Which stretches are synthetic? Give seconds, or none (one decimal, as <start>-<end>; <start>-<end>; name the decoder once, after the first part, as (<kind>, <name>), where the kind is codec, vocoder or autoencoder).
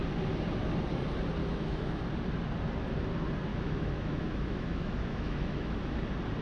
1.4-2.0 (autoencoder, DAC-VAE); 3.5-5.8